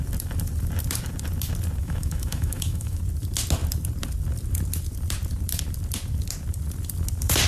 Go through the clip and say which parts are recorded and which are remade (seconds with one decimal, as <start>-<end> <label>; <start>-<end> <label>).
0.0-1.8 recorded; 1.8-3.0 remade; 3.0-7.5 recorded